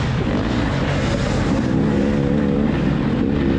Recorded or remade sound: recorded